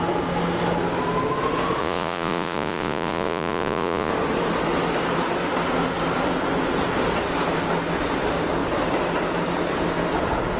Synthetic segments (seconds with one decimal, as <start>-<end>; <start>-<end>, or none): 1.8-4.1